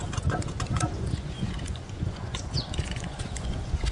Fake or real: fake